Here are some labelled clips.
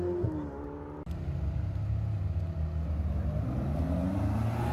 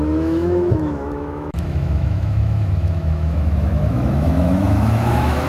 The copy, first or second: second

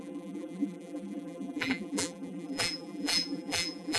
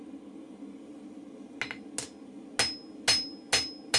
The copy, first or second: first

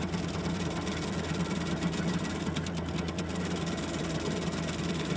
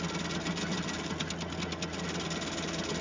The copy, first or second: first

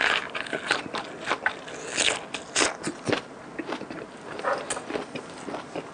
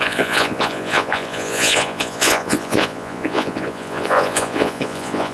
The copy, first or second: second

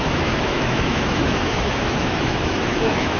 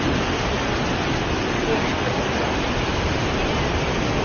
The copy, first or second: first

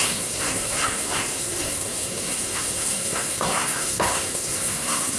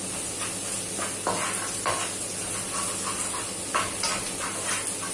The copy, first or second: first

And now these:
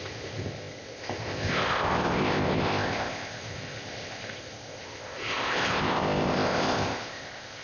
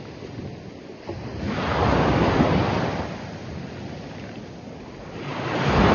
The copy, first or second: first